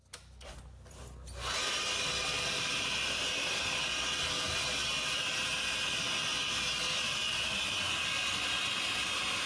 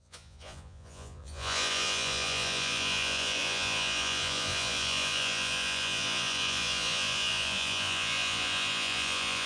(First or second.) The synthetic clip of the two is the second